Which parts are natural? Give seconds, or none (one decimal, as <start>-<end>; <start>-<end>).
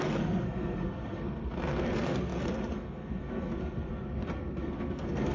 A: none